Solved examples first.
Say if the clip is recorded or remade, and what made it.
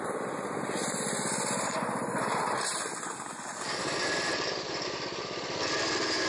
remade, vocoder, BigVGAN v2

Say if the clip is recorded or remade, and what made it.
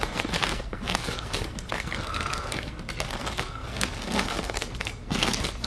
remade, codec, SNAC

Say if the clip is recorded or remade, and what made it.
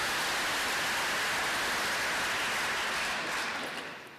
recorded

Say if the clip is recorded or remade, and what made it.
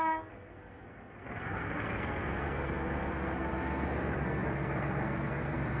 remade, codec, SNAC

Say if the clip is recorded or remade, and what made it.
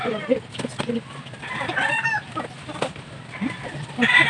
recorded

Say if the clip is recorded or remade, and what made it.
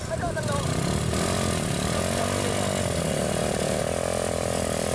recorded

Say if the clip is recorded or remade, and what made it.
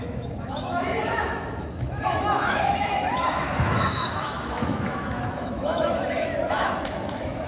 remade, autoencoder, DAC-VAE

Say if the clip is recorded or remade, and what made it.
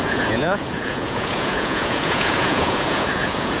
remade, vocoder, Vocos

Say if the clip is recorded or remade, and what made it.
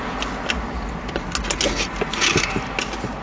recorded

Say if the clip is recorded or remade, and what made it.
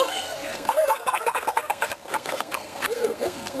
remade, codec, SNAC